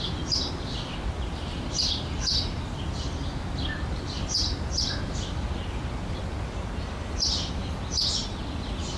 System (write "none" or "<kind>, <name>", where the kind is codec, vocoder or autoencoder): none